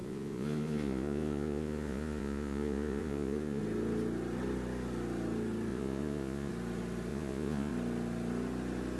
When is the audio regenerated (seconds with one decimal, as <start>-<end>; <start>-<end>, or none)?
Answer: 0.0-3.6; 5.7-6.5; 7.1-7.7